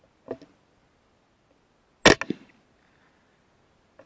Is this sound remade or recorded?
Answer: recorded